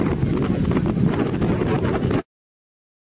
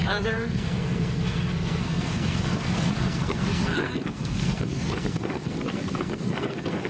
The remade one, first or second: second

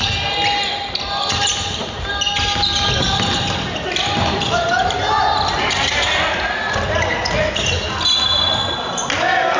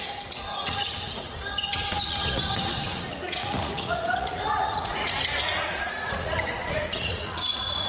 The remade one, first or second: second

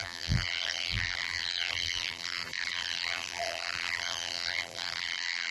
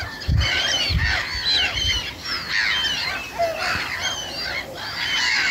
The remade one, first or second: first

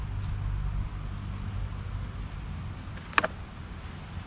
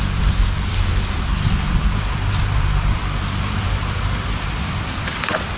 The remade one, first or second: second